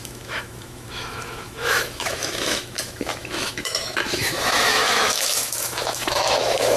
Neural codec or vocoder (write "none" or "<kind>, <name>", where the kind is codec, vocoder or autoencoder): autoencoder, DAC-VAE